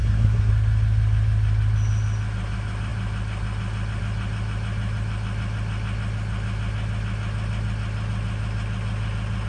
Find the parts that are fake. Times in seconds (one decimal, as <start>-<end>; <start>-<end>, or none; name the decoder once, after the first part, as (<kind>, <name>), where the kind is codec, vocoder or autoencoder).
0.0-0.5 (codec, SNAC)